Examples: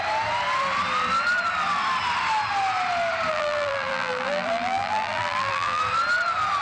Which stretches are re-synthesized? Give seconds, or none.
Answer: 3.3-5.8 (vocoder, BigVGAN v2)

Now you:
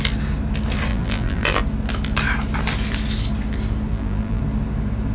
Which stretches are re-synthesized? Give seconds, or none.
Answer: 0.9-1.6 (vocoder, BigVGAN v2); 3.9-4.4